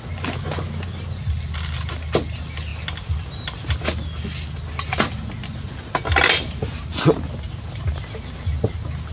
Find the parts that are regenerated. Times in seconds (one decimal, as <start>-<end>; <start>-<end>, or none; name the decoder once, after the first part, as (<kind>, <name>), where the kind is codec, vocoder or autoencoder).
none